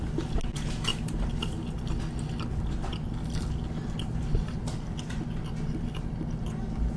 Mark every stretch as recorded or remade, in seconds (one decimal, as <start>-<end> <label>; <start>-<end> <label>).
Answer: 0.0-7.0 recorded